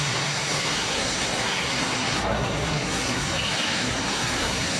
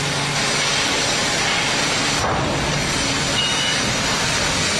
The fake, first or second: first